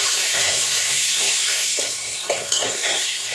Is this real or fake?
fake